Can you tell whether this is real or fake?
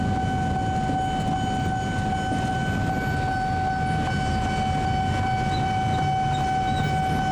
real